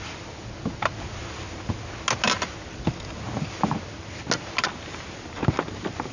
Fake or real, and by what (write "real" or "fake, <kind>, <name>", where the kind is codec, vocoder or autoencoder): real